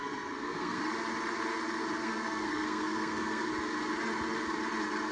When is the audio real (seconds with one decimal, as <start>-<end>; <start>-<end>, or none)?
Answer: 0.8-2.0; 3.5-5.1